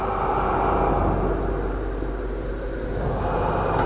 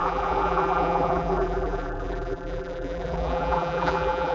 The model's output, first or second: second